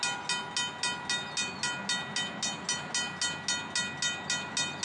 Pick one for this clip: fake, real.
real